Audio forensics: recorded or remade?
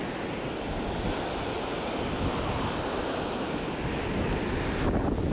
recorded